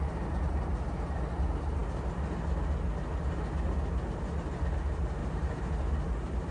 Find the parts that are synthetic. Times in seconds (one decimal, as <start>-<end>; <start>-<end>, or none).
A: 5.2-5.7